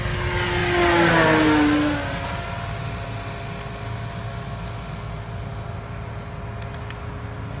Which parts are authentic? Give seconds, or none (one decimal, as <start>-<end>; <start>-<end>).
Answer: 0.0-7.6